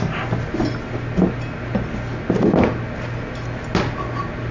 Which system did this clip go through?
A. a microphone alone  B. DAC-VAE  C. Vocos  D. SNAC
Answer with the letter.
A